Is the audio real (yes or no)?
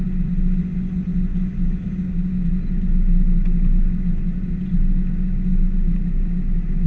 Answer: yes